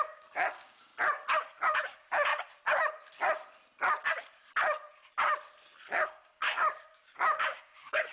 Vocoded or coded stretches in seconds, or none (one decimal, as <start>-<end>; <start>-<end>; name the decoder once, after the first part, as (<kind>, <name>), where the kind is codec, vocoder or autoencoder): 0.0-0.9 (codec, DAC); 1.7-2.3; 5.9-8.1